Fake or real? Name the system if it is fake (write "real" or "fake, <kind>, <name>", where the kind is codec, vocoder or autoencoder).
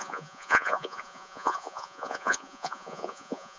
fake, vocoder, Vocos